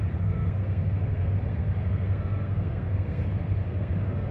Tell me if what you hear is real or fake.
fake